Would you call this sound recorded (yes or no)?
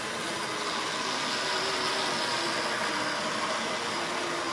yes